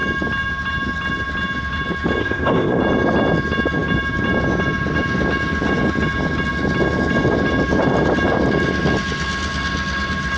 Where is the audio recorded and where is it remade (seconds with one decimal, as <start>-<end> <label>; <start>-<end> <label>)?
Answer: 0.0-2.2 recorded; 2.2-2.8 remade; 2.8-10.4 recorded